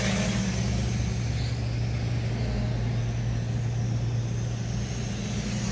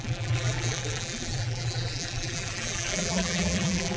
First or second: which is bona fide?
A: first